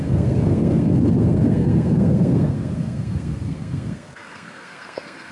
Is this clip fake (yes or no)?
yes